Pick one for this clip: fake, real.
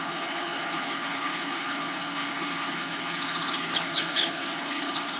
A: fake